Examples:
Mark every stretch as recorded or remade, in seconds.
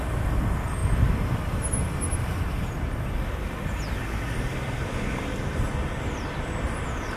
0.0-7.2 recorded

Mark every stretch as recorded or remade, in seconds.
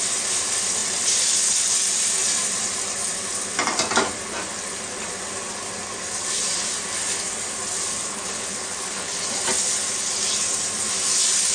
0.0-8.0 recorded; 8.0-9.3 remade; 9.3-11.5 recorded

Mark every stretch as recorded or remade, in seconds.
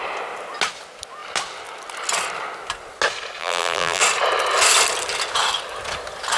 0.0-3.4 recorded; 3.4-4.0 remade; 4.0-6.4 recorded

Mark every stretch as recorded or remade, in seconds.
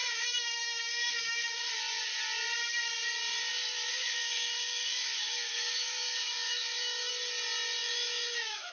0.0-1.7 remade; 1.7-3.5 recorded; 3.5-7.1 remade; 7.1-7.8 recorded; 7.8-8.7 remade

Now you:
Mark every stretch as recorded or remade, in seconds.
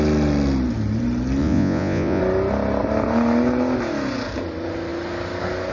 0.0-1.4 recorded; 1.4-2.2 remade; 2.2-5.7 recorded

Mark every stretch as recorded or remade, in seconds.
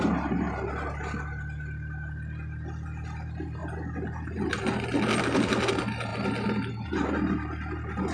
0.0-8.1 recorded